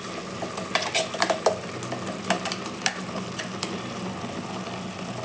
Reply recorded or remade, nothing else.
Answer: recorded